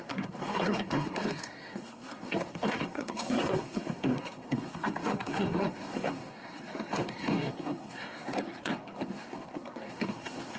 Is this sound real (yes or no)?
no